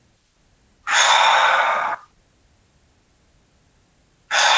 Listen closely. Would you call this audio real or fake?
real